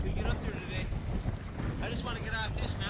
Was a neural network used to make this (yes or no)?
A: no